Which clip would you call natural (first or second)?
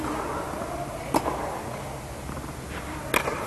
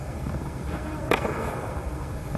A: first